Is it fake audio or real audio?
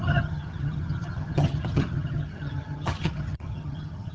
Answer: fake